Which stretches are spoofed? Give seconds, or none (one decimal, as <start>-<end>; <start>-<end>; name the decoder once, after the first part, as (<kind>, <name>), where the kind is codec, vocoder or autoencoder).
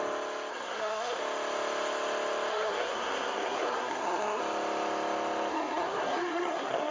0.5-1.2 (codec, SNAC); 2.5-4.4; 5.5-6.9